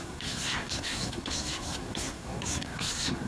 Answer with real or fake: fake